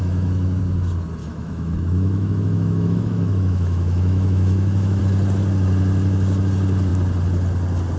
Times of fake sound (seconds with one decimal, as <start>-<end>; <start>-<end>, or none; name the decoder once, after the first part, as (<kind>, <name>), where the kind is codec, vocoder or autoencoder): 0.0-0.6 (autoencoder, DAC-VAE); 1.2-5.0